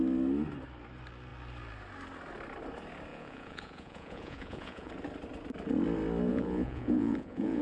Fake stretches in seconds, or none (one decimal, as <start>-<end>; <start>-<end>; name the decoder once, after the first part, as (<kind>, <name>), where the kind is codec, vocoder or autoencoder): 3.1-4.9 (vocoder, Vocos); 6.3-7.6